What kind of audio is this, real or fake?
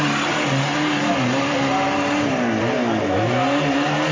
real